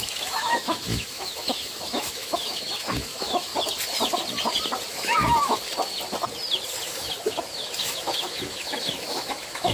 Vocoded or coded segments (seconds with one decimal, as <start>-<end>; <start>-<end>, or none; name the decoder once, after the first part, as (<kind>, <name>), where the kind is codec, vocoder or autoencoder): 0.0-3.5 (autoencoder, DAC-VAE); 4.9-5.6; 6.8-9.7